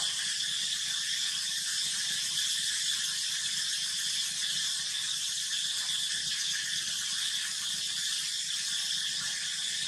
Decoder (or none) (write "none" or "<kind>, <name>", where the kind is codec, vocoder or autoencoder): none